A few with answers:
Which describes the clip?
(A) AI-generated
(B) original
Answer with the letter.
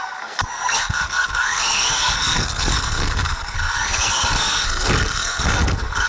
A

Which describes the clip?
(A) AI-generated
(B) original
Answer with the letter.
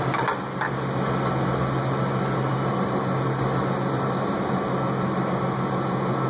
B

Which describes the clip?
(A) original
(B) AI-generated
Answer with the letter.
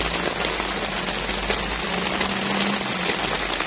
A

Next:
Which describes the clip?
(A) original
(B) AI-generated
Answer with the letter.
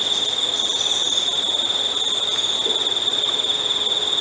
A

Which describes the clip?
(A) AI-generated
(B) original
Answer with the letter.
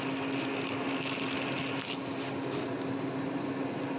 B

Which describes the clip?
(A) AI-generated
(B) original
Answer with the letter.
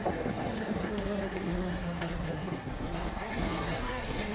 A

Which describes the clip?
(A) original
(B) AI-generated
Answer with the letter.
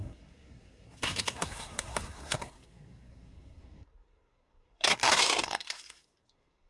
B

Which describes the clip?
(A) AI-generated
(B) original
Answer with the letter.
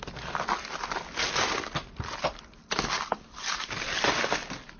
B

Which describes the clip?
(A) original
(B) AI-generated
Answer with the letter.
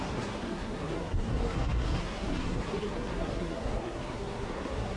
B